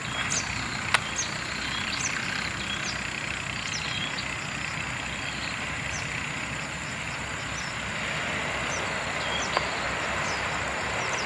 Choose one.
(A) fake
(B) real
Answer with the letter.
B